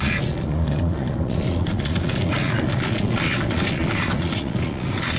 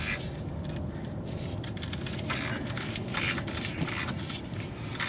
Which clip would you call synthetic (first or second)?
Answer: first